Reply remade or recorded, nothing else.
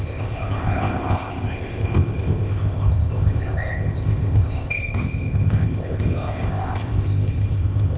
remade